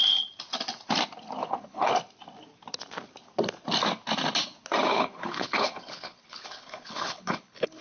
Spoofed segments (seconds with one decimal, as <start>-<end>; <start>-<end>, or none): 1.4-1.9; 4.9-7.8